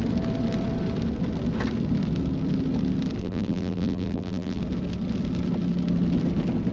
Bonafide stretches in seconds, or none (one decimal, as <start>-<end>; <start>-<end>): 0.0-3.2; 4.6-6.7

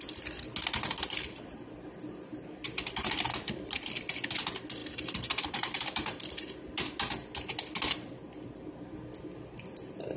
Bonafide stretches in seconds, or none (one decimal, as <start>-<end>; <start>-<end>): 0.0-4.8; 6.2-10.2

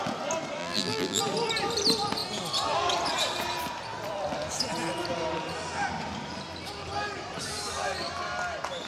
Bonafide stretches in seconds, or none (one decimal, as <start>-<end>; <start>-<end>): 0.0-0.6; 1.2-8.9

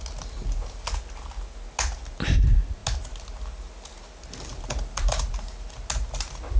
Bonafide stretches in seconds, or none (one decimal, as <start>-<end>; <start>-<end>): 0.0-4.5; 5.3-6.6

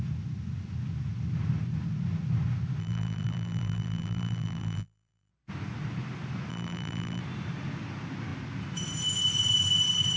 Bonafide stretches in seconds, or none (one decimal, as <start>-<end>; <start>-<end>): 0.0-2.8; 5.3-6.5; 7.2-10.2

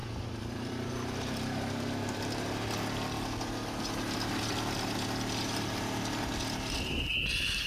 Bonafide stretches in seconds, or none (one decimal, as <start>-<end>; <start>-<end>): 0.9-7.7

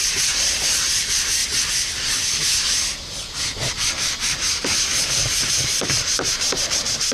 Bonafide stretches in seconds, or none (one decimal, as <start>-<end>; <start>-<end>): 1.4-3.7; 4.9-5.6